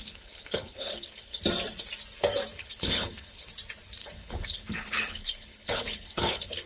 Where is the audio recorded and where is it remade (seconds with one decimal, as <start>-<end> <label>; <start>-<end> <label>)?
0.0-1.4 remade; 1.4-2.5 recorded; 2.5-3.5 remade; 3.5-4.0 recorded; 4.0-6.7 remade